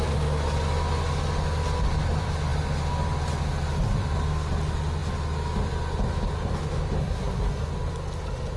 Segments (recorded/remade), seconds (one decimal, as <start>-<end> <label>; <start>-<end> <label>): 0.0-7.0 recorded; 7.0-7.7 remade; 7.7-8.6 recorded